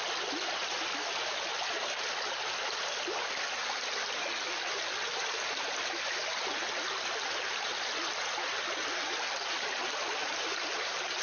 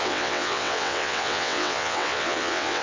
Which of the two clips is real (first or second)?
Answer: first